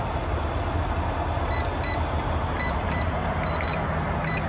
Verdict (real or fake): real